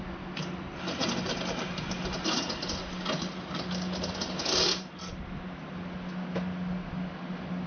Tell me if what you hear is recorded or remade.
recorded